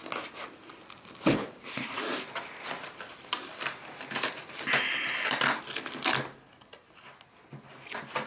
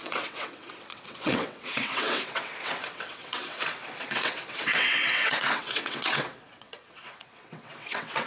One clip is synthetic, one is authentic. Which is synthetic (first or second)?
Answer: second